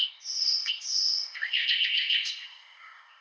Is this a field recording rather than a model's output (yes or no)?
no